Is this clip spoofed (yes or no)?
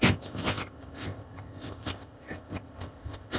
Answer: yes